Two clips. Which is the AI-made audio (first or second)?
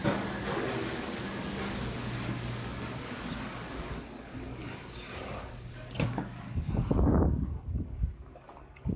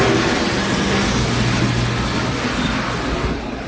first